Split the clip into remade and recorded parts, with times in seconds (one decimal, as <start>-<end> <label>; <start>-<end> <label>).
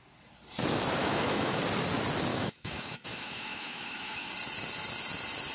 0.0-1.0 recorded; 1.0-1.6 remade; 1.6-2.3 recorded; 2.3-4.3 remade; 4.3-5.5 recorded